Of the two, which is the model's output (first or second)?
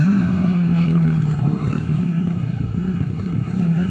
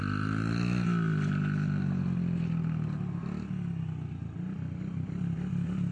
first